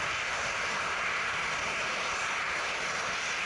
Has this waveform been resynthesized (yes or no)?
yes